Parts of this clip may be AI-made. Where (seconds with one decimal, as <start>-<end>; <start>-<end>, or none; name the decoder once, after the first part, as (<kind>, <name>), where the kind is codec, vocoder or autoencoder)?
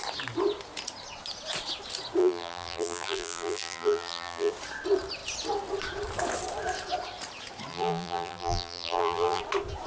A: 2.2-4.5 (vocoder, BigVGAN v2); 7.7-9.4